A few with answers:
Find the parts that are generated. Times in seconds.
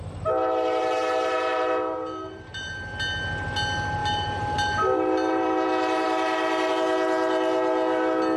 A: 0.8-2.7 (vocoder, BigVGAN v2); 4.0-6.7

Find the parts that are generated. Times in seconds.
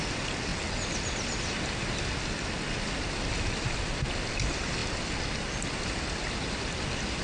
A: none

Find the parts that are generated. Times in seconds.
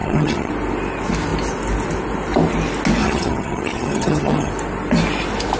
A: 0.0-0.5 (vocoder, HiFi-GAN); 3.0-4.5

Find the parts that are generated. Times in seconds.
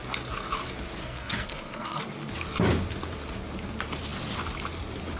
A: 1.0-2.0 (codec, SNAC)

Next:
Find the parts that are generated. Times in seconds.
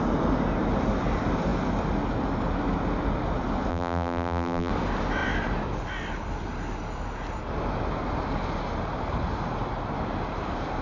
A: 3.7-4.7 (vocoder, BigVGAN v2)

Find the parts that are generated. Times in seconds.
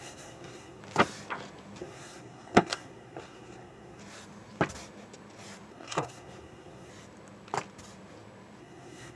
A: 0.0-0.8 (codec, SNAC); 1.8-4.0; 5.7-6.9; 8.6-9.2